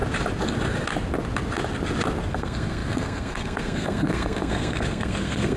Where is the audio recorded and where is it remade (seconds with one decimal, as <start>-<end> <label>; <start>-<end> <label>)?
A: 0.0-2.3 recorded; 2.3-5.6 remade